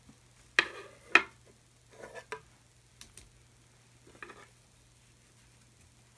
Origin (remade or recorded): recorded